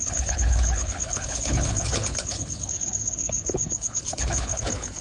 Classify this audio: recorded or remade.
remade